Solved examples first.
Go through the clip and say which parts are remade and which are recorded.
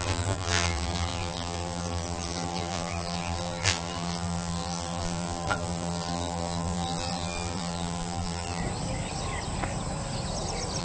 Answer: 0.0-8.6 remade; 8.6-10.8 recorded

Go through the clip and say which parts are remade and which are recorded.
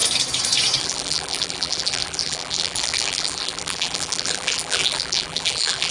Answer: 0.0-0.8 recorded; 0.8-5.9 remade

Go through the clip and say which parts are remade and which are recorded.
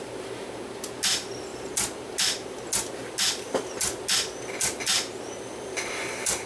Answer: 0.0-6.5 recorded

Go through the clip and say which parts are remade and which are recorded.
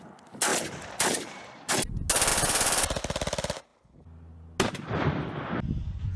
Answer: 0.0-0.5 recorded; 0.5-1.7 remade; 1.7-2.3 recorded; 2.3-3.0 remade; 3.0-6.2 recorded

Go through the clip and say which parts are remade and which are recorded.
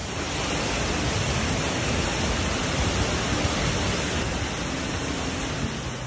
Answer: 0.0-6.1 recorded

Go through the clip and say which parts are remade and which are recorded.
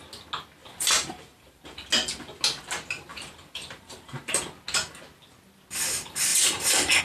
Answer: 0.0-0.6 recorded; 0.6-1.6 remade; 1.6-3.1 recorded; 3.1-4.4 remade; 4.4-6.3 recorded; 6.3-7.0 remade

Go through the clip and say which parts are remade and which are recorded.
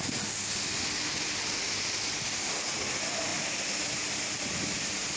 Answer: 0.0-5.2 recorded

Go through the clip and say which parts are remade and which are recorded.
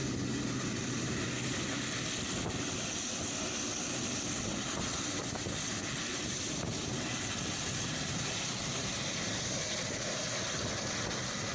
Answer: 0.0-6.1 recorded; 6.1-10.2 remade; 10.2-11.5 recorded